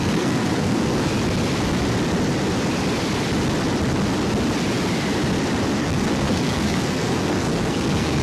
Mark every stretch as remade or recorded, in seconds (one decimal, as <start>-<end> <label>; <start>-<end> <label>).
0.0-1.1 remade; 1.1-5.8 recorded; 5.8-8.2 remade